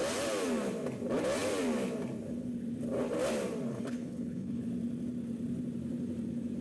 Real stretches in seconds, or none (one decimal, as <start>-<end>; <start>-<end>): 0.0-3.7; 4.6-6.6